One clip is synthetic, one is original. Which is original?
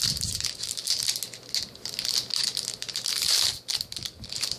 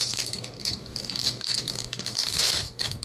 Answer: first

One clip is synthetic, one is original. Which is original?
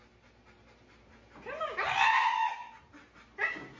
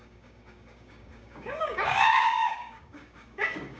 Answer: first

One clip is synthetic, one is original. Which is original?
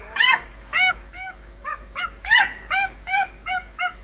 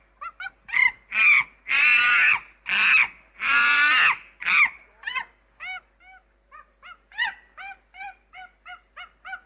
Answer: second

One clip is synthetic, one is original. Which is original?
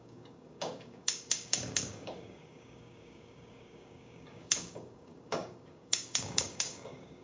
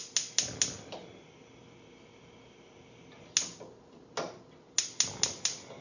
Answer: second